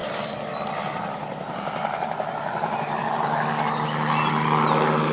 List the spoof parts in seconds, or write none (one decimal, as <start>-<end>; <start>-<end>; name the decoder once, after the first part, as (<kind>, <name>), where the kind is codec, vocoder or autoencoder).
none